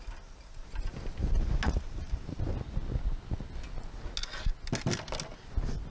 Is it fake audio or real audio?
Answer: real